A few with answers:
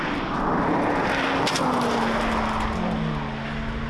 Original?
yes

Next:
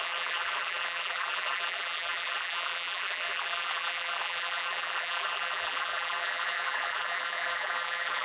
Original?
no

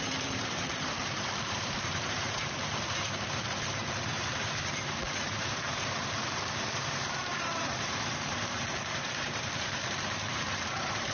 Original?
no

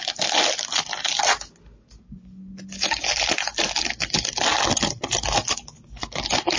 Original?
yes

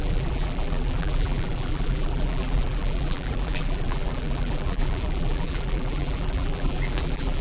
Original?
no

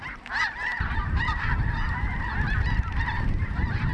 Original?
no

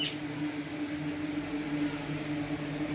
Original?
yes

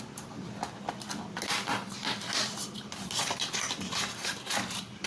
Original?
yes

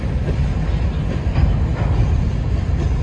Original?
yes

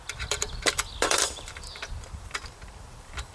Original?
no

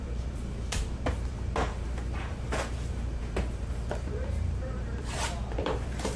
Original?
no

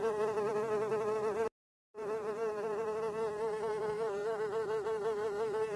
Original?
no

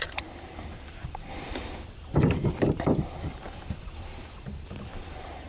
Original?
no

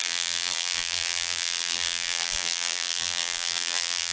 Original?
no